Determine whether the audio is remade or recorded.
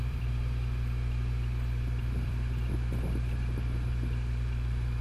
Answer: remade